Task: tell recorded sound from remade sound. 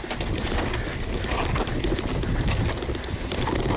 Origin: recorded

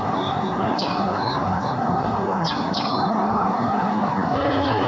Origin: remade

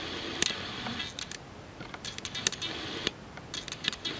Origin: recorded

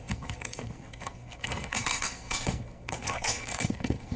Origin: remade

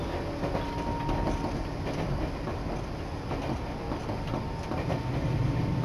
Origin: recorded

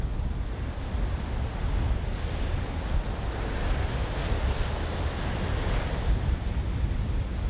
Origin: recorded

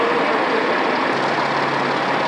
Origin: recorded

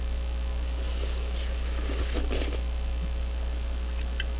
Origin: recorded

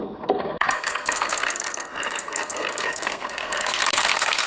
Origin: remade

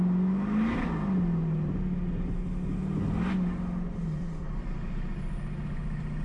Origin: recorded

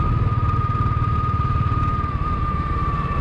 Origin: recorded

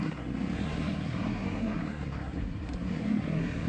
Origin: remade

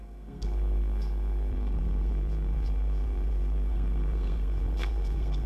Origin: remade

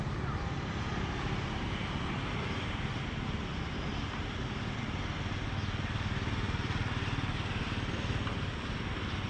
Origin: recorded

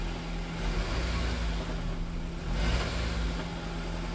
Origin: recorded